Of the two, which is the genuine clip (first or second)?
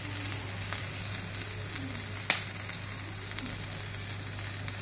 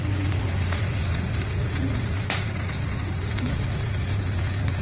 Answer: first